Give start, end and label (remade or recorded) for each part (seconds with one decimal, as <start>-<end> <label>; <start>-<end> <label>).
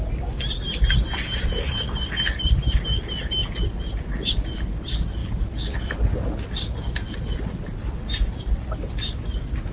0.0-9.7 recorded